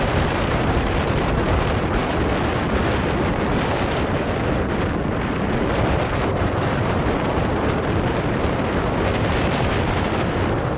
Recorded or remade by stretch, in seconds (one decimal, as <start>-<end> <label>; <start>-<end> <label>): 0.0-10.8 remade